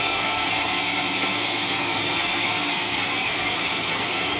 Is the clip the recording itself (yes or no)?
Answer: no